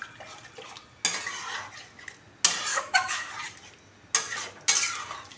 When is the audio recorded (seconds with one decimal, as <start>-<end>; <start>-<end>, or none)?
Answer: 0.0-2.7; 3.3-5.4